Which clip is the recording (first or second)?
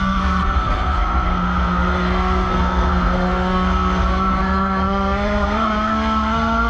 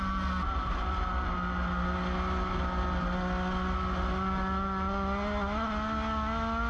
second